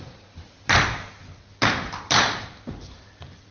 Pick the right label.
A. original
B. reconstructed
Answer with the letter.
A